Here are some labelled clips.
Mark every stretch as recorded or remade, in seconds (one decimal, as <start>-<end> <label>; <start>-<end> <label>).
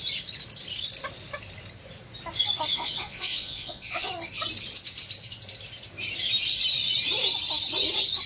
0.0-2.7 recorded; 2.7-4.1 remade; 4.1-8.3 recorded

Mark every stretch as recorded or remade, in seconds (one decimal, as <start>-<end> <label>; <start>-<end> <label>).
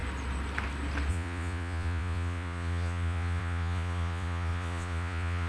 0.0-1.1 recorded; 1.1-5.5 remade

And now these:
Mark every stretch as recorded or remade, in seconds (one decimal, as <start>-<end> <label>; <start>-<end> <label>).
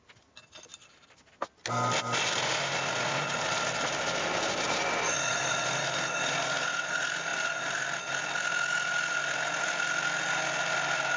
0.0-11.2 recorded